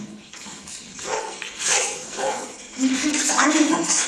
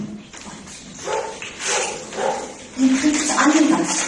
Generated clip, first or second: first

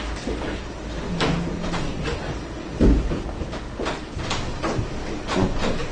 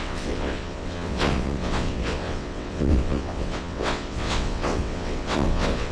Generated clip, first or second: second